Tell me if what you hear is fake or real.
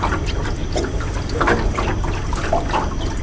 real